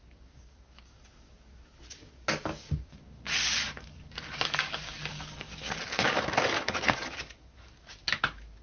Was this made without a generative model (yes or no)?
no